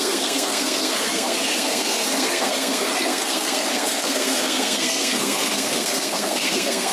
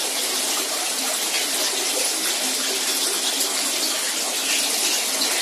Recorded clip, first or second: second